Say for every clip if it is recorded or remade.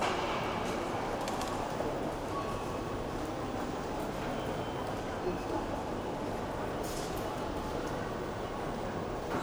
recorded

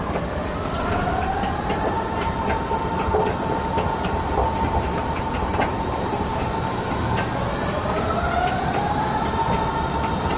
remade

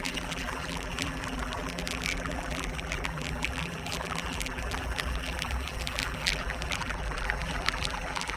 remade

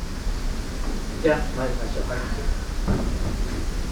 recorded